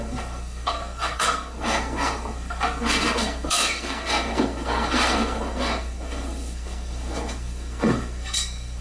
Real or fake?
fake